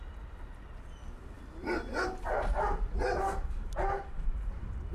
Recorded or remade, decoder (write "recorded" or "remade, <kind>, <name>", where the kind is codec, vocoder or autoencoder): recorded